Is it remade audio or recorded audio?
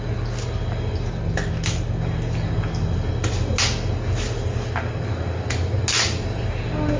recorded